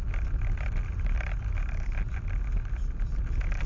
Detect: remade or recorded recorded